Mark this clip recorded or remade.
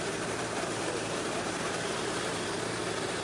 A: remade